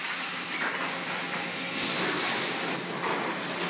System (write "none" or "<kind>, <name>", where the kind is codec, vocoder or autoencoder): none